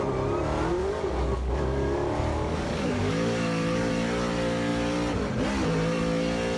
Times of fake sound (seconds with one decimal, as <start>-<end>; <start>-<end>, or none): 0.8-3.9